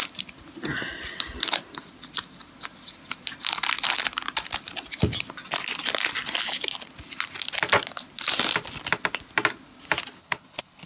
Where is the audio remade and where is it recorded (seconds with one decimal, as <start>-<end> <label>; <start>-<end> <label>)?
0.0-10.2 recorded; 10.2-10.9 remade